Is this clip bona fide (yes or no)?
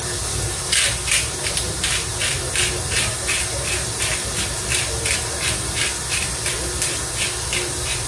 yes